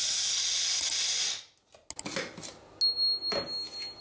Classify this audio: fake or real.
real